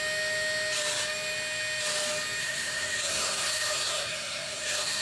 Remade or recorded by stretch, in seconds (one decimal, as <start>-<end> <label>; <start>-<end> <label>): 0.0-2.4 recorded; 2.4-5.0 remade